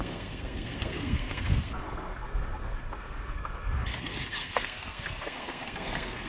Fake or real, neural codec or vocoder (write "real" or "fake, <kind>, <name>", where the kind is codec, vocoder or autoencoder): fake, codec, SNAC